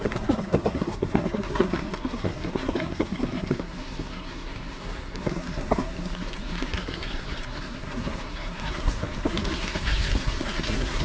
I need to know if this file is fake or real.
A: fake